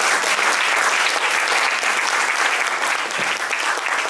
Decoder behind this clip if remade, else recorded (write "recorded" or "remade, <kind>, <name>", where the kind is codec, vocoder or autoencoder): recorded